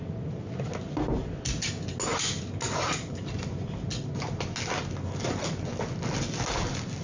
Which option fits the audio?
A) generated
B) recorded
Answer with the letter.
B